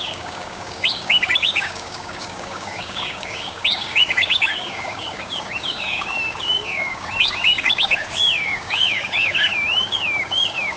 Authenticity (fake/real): fake